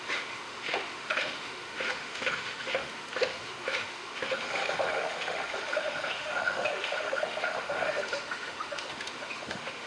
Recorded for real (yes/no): no